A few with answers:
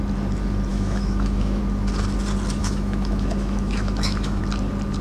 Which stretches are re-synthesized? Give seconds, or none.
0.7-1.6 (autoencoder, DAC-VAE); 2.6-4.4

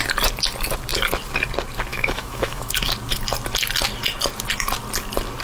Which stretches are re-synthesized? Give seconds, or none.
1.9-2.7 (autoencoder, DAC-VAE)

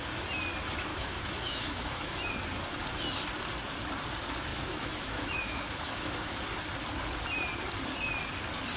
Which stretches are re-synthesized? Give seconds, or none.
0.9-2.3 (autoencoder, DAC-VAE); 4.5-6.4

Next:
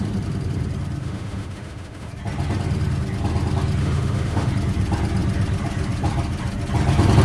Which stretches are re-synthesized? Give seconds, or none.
1.0-2.1 (autoencoder, DAC-VAE); 3.8-4.5